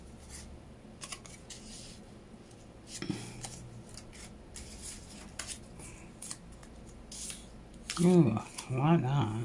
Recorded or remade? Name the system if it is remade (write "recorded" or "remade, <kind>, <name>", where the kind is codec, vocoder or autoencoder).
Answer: recorded